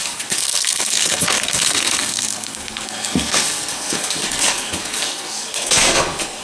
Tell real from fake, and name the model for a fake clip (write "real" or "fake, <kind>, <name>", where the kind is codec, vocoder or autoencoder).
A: fake, codec, SNAC